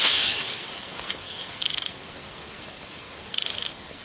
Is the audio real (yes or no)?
no